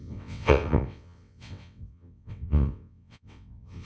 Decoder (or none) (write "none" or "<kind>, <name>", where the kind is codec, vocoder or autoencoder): vocoder, WaveNeXt